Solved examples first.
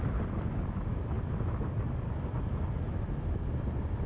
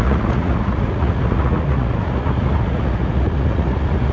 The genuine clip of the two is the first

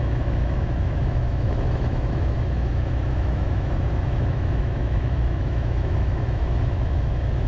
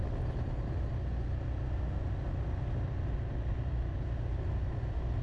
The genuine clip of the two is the second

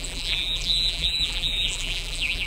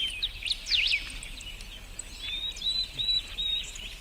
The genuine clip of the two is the second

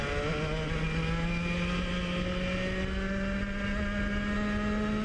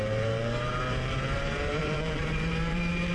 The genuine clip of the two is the first